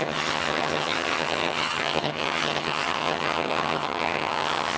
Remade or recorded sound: remade